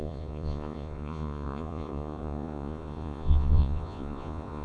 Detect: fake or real fake